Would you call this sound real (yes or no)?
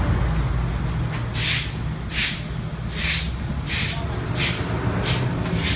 yes